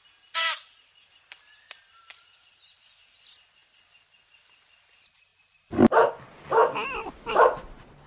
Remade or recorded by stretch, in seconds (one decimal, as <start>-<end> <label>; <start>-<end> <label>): 0.0-8.1 recorded